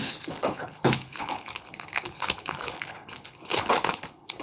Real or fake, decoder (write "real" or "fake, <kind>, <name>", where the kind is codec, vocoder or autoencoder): fake, codec, HILCodec